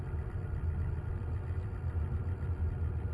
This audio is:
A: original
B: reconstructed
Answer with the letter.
A